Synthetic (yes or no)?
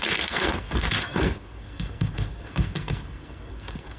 yes